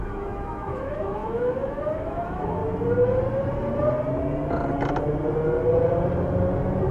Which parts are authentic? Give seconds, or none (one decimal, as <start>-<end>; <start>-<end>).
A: 2.6-6.9